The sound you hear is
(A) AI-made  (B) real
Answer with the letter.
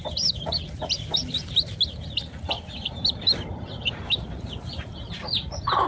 A